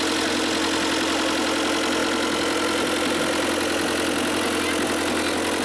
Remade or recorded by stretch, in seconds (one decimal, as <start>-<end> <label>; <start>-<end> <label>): 0.0-5.6 recorded